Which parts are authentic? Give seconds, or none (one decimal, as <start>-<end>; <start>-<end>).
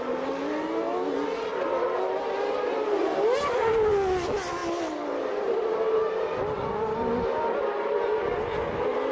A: 0.0-9.1